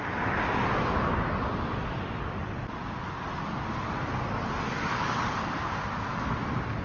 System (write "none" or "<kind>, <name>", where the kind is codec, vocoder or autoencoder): none